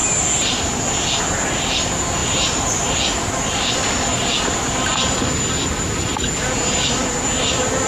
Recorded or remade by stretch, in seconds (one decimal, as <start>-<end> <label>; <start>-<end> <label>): 0.0-2.2 recorded; 2.2-2.9 remade; 2.9-7.9 recorded